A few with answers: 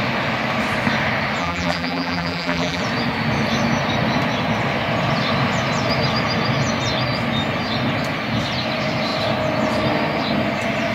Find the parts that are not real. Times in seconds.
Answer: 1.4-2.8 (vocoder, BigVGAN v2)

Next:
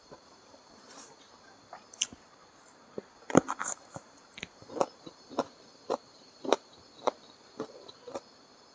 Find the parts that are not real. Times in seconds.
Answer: 0.0-1.3 (vocoder, BigVGAN v2); 3.6-6.8

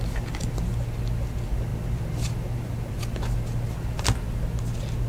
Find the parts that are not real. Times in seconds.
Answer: none

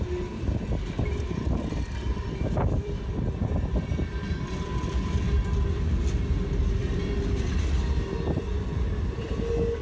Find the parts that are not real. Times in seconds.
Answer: 1.1-5.8 (vocoder, BigVGAN v2); 6.8-7.9

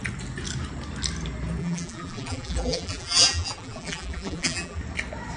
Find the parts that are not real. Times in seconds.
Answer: 1.6-4.8 (vocoder, BigVGAN v2)

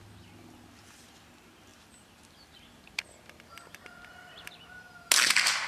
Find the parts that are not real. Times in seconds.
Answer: 1.7-5.1 (vocoder, BigVGAN v2)